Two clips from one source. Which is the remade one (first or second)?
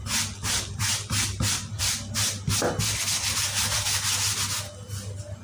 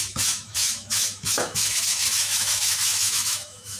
second